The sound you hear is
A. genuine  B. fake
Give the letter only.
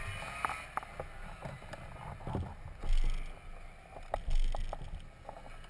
A